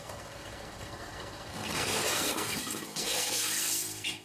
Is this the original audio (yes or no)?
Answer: no